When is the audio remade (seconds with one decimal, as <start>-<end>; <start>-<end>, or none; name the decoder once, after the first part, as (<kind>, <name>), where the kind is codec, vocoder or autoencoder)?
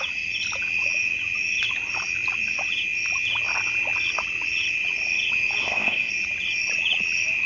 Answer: 5.6-6.1 (codec, ZipCodec)